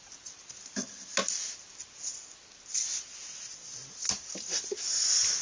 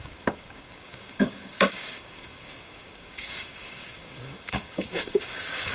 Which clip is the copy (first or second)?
second